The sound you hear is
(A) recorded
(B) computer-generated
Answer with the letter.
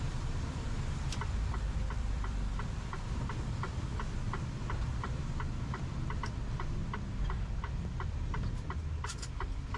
B